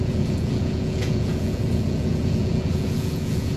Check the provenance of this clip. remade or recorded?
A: remade